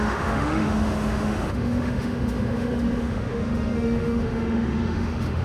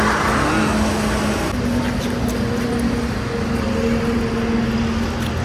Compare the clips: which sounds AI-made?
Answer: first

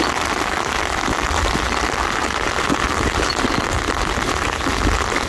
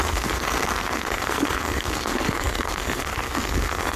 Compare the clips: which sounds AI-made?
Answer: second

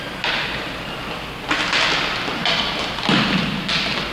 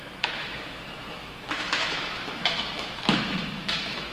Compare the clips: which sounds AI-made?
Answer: second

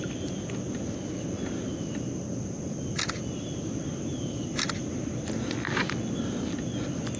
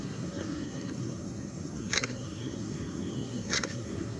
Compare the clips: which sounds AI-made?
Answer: second